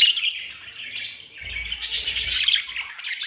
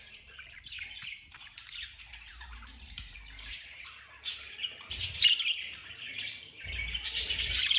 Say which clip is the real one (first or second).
first